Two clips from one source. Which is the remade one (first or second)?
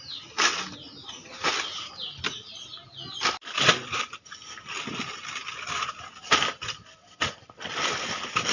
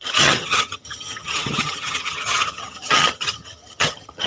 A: second